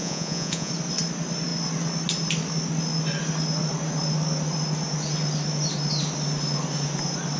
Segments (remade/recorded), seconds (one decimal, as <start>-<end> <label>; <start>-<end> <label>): 0.0-0.7 remade; 0.7-7.4 recorded